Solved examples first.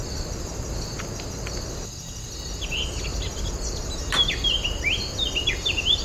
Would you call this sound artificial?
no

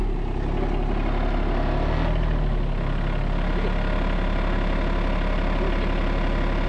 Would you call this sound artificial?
no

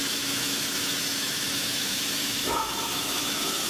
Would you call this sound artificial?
yes